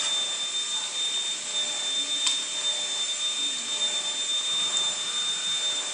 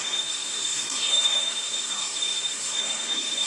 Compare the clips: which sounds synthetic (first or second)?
second